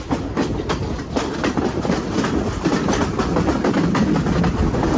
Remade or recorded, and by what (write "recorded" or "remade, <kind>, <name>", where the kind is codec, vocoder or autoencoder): recorded